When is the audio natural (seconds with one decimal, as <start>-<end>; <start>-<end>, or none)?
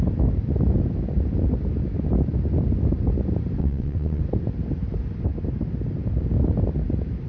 0.0-3.6; 4.2-7.3